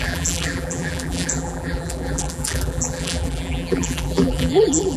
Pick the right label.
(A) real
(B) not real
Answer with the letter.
B